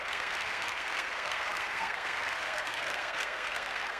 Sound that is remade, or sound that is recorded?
remade